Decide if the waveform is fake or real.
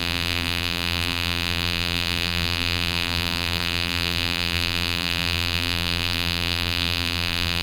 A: fake